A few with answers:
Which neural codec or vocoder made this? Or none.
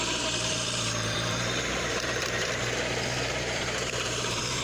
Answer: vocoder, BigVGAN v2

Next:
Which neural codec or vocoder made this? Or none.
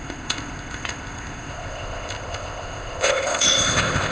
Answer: codec, ZipCodec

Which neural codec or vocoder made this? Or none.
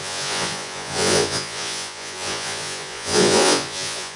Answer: vocoder, Vocos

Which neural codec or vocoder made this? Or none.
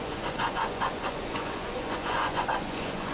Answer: vocoder, Vocos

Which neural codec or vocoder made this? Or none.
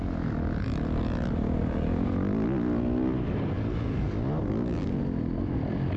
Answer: none